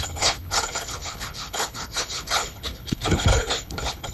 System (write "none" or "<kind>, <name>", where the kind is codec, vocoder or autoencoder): codec, HILCodec